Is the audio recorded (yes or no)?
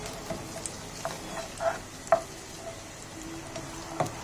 yes